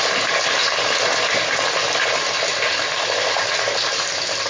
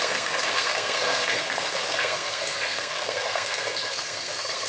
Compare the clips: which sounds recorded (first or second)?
first